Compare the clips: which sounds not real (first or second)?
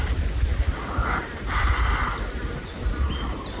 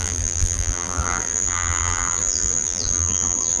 second